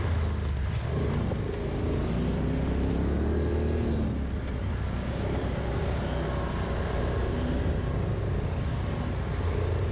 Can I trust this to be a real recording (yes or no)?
yes